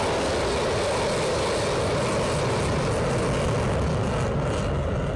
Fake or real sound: real